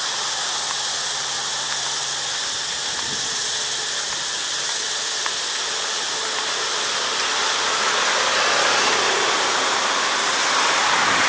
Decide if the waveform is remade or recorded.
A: recorded